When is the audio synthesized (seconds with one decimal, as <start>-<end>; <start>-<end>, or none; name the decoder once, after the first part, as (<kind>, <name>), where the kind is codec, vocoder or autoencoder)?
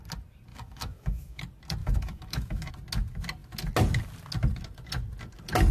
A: 0.5-1.4 (autoencoder, DAC-VAE); 1.8-2.7